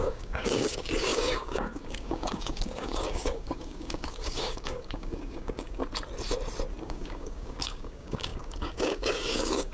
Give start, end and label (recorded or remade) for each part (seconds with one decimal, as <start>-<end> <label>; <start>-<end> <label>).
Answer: 0.0-5.8 remade; 5.8-6.8 recorded; 6.8-9.7 remade